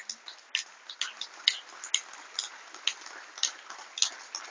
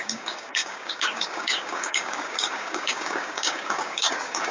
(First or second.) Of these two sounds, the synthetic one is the second